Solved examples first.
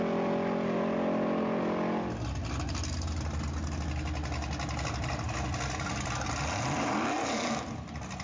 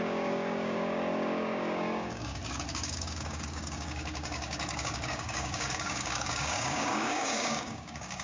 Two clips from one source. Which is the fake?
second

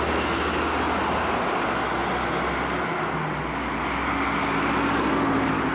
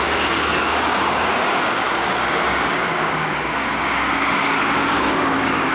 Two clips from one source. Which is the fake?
second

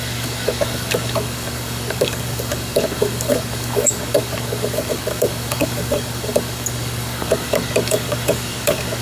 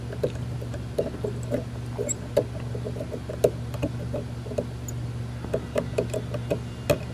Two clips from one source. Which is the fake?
first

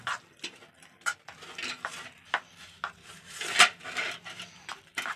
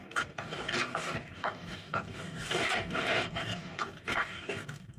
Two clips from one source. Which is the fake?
second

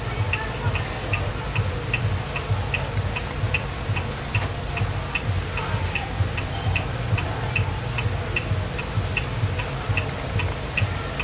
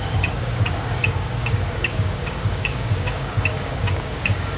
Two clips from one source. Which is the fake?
second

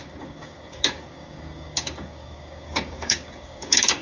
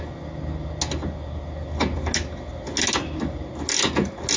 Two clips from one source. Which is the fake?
first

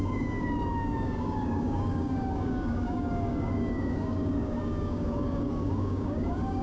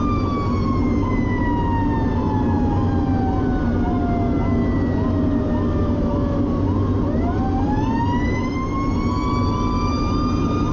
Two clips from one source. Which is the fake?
first